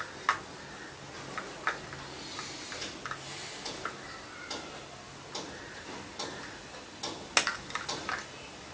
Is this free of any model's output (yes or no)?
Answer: yes